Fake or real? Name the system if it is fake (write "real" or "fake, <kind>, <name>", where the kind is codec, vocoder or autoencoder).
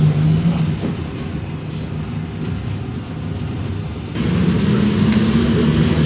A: real